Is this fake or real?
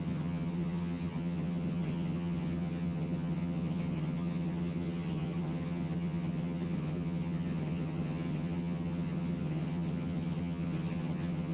fake